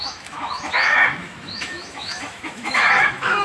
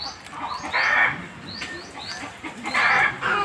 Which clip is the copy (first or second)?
first